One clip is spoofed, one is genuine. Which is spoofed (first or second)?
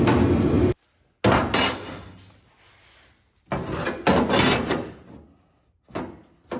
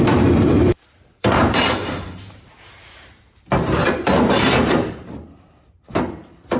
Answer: second